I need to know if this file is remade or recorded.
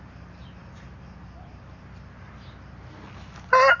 recorded